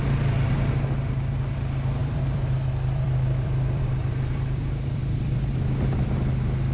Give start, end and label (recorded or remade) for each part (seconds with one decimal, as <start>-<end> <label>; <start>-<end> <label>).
0.0-2.0 recorded; 2.0-5.6 remade; 5.6-6.7 recorded